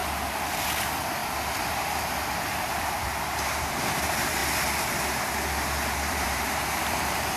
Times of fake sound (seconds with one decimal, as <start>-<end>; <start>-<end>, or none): 0.6-1.2; 3.1-4.4; 6.1-7.4